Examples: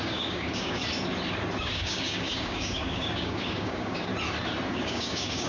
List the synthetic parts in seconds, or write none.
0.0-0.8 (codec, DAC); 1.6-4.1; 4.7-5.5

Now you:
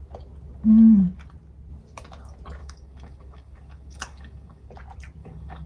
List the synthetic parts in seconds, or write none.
2.6-4.7 (codec, DAC); 5.2-5.7